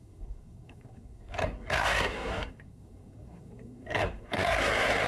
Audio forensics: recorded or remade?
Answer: remade